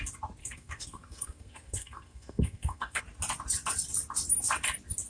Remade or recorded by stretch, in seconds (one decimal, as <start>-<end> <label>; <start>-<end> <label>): 0.0-0.4 recorded; 0.4-3.0 remade; 3.0-5.1 recorded